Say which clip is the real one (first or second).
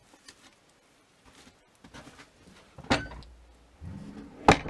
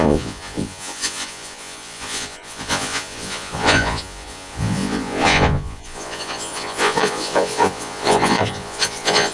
first